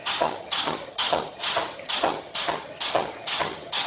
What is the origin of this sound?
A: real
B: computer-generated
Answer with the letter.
B